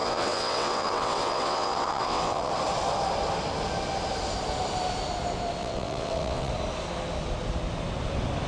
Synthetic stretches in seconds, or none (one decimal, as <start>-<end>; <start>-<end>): 0.0-2.5; 5.6-6.5